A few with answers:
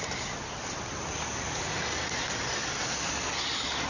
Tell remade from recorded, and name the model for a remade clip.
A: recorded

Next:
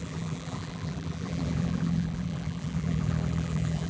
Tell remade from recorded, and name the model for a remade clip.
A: remade, vocoder, BigVGAN v2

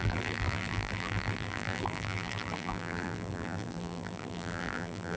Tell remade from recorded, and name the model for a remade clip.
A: remade, vocoder, BigVGAN v2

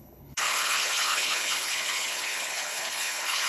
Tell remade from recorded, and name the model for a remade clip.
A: remade, codec, HILCodec